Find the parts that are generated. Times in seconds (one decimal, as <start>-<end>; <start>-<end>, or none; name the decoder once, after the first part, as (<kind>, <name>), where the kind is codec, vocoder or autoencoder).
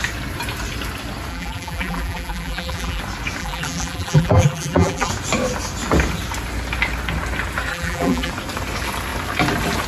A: 1.3-3.0 (vocoder, BigVGAN v2); 3.4-5.1; 7.7-8.3